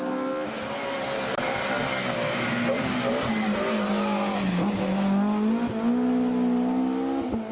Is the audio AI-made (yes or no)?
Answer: no